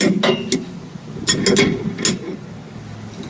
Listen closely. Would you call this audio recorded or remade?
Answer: recorded